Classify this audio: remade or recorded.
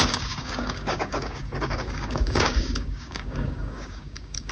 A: remade